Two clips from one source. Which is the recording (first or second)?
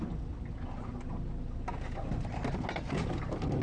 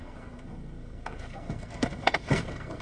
first